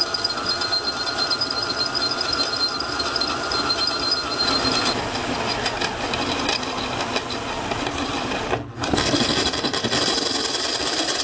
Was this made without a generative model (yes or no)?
yes